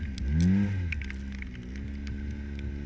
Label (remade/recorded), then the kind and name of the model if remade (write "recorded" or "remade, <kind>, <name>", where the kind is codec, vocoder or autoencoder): recorded